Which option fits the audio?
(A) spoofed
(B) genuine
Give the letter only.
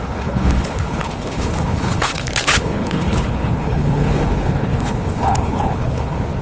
A